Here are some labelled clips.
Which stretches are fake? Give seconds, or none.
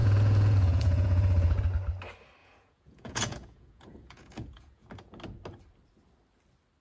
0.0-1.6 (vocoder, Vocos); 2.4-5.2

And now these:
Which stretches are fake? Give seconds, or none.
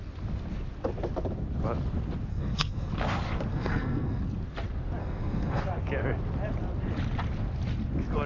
2.3-2.9 (codec, SNAC); 3.5-4.2; 5.0-5.6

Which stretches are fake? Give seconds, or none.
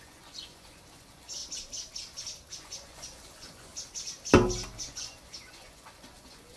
0.0-1.4 (vocoder, Vocos); 2.5-3.7; 4.8-6.6